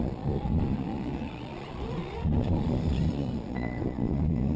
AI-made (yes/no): yes